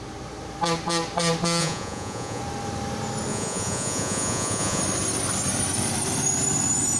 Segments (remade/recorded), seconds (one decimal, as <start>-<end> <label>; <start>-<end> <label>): 0.0-1.6 recorded; 1.6-2.4 remade; 2.4-3.3 recorded; 3.3-4.8 remade; 4.8-7.0 recorded